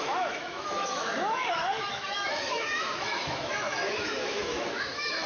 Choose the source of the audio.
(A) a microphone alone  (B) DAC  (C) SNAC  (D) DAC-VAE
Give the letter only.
D